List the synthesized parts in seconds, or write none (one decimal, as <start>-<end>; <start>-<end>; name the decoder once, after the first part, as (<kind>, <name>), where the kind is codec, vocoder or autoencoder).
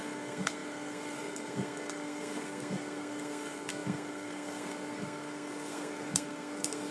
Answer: 0.0-6.9 (codec, SNAC)